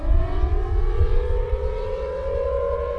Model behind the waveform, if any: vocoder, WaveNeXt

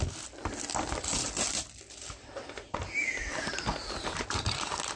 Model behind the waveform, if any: none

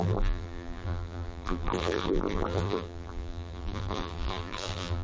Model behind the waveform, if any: vocoder, BigVGAN v2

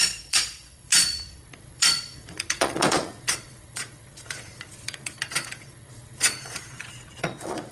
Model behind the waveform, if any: vocoder, Vocos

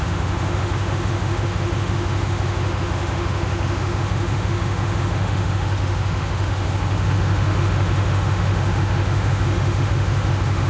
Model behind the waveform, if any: autoencoder, DAC-VAE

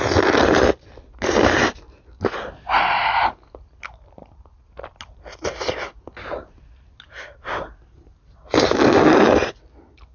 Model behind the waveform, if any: none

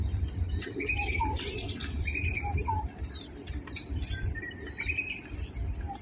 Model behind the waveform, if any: vocoder, BigVGAN v2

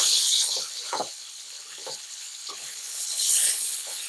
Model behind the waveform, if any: codec, HILCodec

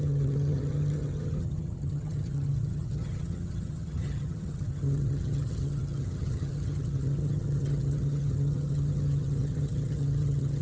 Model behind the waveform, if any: vocoder, HiFi-GAN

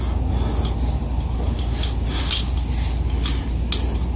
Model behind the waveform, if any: none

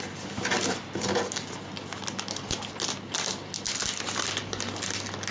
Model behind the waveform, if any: none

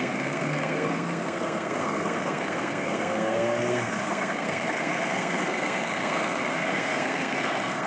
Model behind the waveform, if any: codec, SNAC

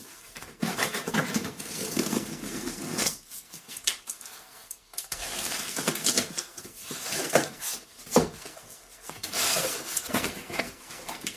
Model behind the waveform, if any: codec, SNAC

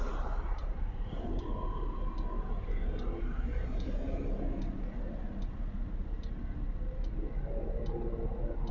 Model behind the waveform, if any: none